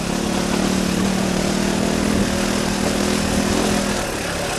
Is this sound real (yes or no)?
yes